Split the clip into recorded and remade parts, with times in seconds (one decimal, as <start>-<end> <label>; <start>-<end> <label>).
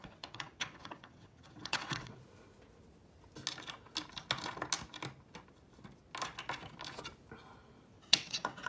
0.0-2.2 remade; 2.2-7.9 recorded; 7.9-8.7 remade